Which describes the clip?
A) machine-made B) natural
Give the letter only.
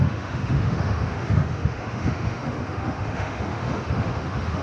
A